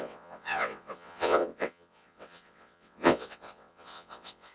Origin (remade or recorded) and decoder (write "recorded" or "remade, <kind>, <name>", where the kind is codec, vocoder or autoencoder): remade, vocoder, WaveNeXt